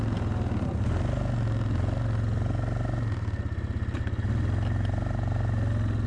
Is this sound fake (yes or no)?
no